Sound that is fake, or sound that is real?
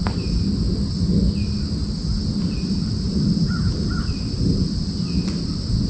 real